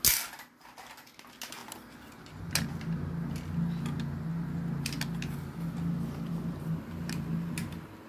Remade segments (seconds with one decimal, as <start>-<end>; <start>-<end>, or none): none